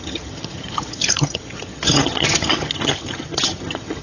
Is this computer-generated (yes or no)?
yes